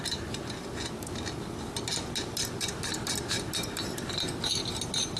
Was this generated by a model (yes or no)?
no